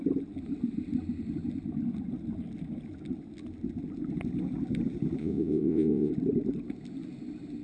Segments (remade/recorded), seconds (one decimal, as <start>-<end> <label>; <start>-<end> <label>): 0.0-5.2 recorded; 5.2-6.1 remade; 6.1-7.6 recorded